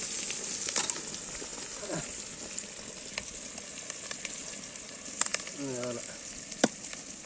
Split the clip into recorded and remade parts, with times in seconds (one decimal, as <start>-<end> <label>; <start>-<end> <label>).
0.0-7.3 recorded